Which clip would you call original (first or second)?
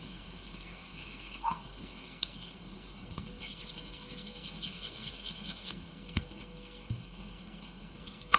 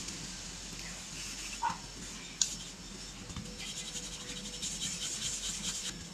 second